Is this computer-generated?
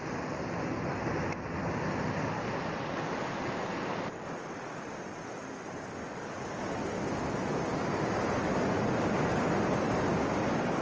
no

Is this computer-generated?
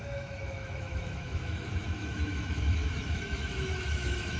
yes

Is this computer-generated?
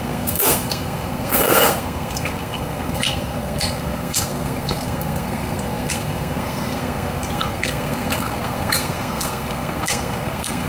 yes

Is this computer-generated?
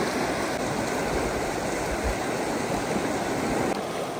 no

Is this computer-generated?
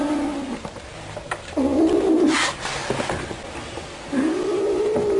no